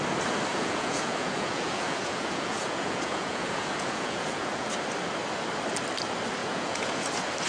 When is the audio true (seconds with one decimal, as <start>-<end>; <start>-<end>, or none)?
0.0-0.5; 4.7-6.4; 7.1-7.5